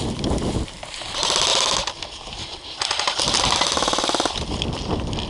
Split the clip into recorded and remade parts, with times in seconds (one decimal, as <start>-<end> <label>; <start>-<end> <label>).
0.0-5.3 recorded